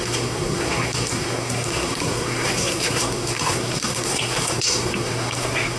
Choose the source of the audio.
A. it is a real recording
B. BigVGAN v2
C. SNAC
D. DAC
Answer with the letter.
C